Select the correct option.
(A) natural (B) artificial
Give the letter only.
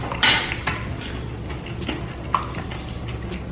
A